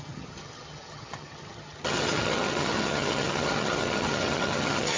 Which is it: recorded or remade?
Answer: remade